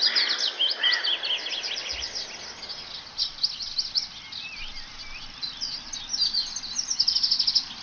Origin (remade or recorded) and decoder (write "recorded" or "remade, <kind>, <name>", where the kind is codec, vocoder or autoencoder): recorded